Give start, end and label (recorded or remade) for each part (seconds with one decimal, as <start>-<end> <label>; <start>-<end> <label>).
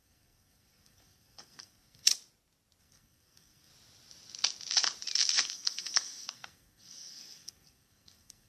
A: 0.0-2.1 remade; 2.1-2.8 recorded; 2.8-3.7 remade; 3.7-5.3 recorded; 5.3-8.5 remade